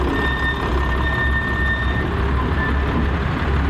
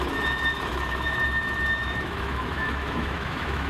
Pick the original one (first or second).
first